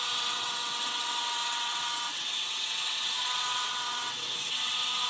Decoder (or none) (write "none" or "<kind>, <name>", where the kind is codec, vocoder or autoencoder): vocoder, WaveNeXt